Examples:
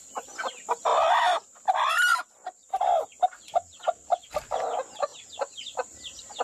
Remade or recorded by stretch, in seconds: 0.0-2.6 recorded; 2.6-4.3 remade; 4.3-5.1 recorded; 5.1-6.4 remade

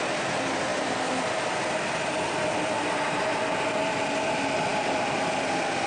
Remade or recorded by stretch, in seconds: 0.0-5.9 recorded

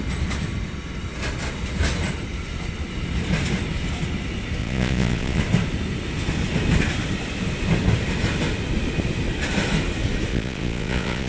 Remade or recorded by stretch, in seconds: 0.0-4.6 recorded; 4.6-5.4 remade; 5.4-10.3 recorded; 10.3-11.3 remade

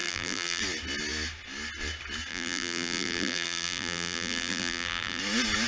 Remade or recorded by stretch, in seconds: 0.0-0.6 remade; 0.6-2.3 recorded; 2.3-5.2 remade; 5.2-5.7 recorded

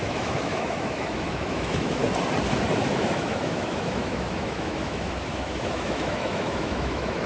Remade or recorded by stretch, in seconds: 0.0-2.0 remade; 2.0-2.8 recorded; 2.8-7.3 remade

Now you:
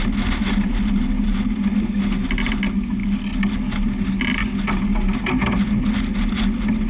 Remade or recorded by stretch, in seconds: 0.0-6.9 recorded